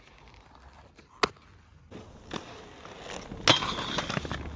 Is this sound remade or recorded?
recorded